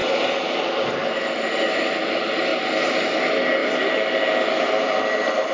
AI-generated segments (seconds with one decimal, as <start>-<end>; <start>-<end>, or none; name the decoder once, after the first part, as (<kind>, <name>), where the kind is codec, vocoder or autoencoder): none